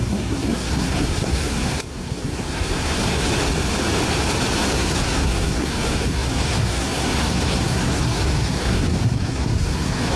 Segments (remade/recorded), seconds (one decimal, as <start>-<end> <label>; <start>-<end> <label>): 0.0-3.3 remade; 3.3-4.7 recorded; 4.7-10.2 remade